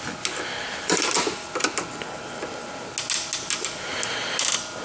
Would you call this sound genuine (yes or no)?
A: yes